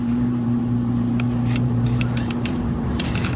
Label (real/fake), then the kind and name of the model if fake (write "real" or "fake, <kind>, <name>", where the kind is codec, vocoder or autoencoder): fake, vocoder, BigVGAN v2